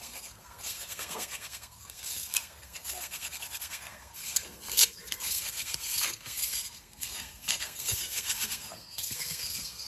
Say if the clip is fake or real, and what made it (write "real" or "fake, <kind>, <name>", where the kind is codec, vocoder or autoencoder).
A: fake, codec, SNAC